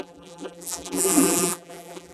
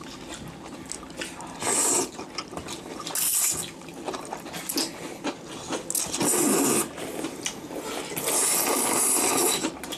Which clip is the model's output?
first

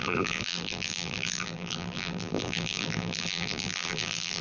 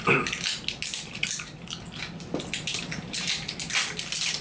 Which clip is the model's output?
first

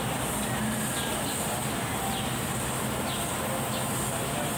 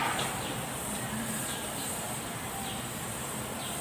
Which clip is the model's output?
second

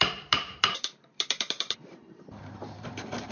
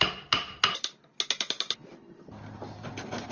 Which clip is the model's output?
first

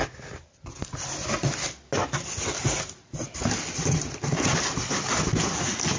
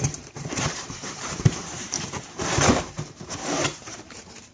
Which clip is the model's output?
second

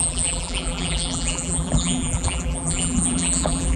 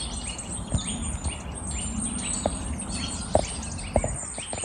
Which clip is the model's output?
first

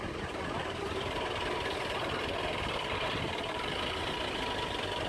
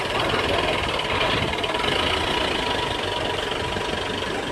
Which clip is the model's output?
first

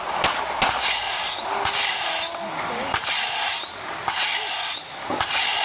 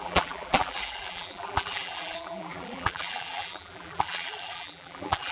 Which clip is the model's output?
second